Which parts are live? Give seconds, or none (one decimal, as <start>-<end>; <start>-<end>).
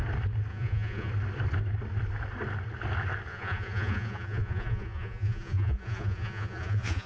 0.0-0.5; 1.1-3.3